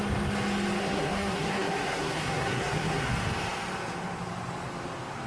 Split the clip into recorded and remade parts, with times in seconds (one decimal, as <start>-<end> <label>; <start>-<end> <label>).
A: 0.0-0.8 recorded; 0.8-3.1 remade; 3.1-5.3 recorded